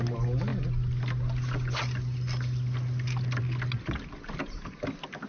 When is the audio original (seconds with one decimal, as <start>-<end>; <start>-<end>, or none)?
0.0-5.3